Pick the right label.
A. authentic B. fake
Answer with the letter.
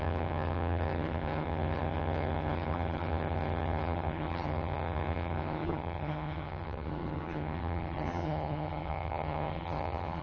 B